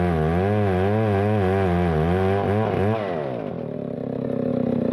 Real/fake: real